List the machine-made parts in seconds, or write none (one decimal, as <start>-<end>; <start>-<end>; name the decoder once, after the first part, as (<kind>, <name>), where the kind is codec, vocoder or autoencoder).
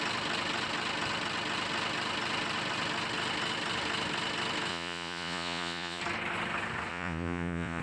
4.7-6.0 (vocoder, Vocos); 6.9-7.8